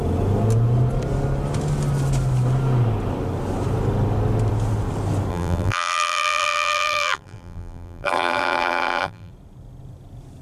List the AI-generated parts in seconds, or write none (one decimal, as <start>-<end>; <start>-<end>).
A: 5.3-9.3